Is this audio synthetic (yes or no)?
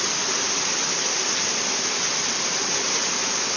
no